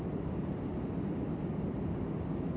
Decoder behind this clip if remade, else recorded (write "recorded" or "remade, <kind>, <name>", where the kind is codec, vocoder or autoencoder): recorded